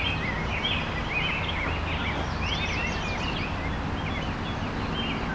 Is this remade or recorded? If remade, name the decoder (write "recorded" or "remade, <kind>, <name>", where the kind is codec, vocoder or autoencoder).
recorded